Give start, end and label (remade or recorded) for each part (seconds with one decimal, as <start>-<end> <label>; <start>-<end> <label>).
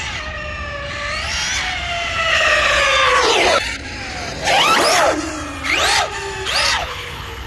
0.0-2.3 recorded; 2.3-2.8 remade; 2.8-6.8 recorded; 6.8-7.5 remade